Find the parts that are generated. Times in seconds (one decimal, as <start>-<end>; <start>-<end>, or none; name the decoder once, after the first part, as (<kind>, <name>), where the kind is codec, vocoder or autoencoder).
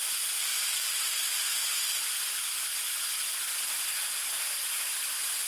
0.0-0.5 (vocoder, BigVGAN v2); 1.0-1.4; 1.9-2.7; 3.2-5.5